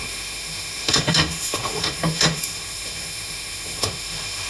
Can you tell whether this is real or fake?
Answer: fake